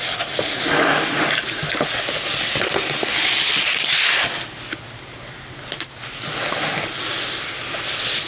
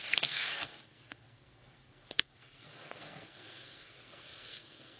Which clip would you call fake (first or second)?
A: second